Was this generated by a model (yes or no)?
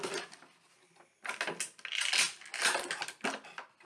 no